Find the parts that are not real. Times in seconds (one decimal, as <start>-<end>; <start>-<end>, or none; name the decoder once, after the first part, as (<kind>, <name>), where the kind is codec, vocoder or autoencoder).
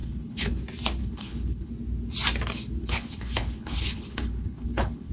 0.0-0.6 (codec, HILCodec); 1.0-1.7; 2.8-5.1